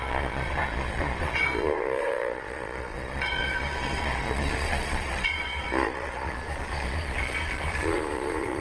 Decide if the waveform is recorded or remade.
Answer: remade